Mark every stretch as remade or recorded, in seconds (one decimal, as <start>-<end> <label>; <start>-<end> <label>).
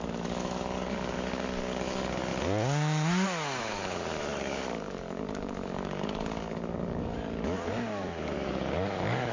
0.0-2.3 remade; 2.3-3.6 recorded; 3.6-9.3 remade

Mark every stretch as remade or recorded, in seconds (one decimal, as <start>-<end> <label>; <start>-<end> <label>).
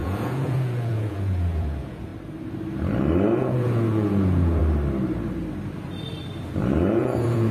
0.0-2.1 remade; 2.1-3.4 recorded; 3.4-4.6 remade; 4.6-6.9 recorded; 6.9-7.5 remade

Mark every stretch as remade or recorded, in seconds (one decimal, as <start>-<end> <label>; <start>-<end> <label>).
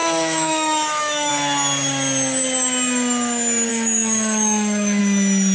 0.0-1.3 remade; 1.3-3.7 recorded; 3.7-5.0 remade; 5.0-5.5 recorded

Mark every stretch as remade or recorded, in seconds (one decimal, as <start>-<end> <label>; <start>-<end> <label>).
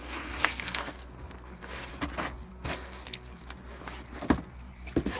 0.0-1.9 remade; 1.9-2.5 recorded; 2.5-3.4 remade; 3.4-5.2 recorded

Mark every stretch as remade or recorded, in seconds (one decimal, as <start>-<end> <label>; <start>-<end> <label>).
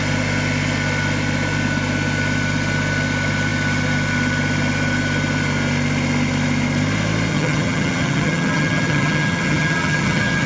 0.0-7.3 recorded; 7.3-10.5 remade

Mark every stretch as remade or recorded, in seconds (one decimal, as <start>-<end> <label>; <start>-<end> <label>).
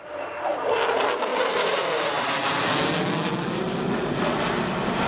0.0-5.1 recorded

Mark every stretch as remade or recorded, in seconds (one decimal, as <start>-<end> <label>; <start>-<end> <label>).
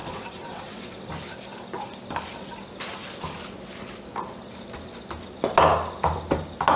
0.0-1.1 remade; 1.1-6.8 recorded